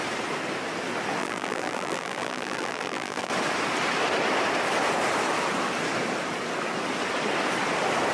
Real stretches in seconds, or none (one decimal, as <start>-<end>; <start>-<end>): 0.0-1.2; 3.3-8.1